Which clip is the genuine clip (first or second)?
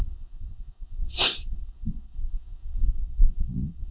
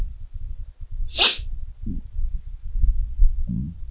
second